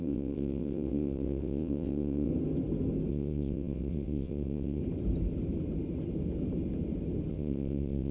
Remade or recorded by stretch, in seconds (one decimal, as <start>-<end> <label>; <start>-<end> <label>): 0.0-2.3 remade; 2.3-3.1 recorded; 3.1-4.8 remade; 4.8-7.3 recorded; 7.3-8.1 remade